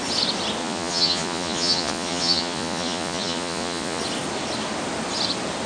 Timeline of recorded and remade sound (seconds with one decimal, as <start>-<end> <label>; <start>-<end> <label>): 0.0-0.6 recorded; 0.6-4.0 remade; 4.0-5.7 recorded